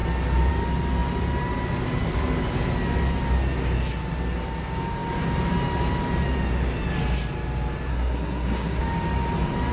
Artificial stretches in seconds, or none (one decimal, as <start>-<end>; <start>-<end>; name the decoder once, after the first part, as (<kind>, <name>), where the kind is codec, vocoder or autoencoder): 7.9-8.8 (codec, SNAC)